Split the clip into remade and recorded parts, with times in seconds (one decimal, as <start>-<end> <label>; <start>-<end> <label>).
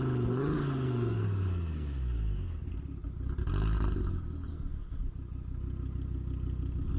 0.0-0.5 recorded; 0.5-2.7 remade; 2.7-4.5 recorded; 4.5-5.0 remade; 5.0-7.0 recorded